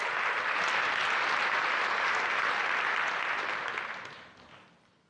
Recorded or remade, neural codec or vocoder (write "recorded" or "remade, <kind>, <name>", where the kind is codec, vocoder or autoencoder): recorded